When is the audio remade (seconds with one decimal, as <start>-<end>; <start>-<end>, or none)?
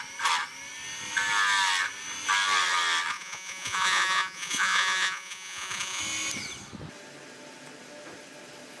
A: 3.1-6.0